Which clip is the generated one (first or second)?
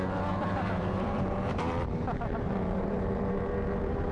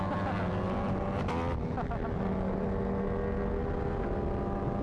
first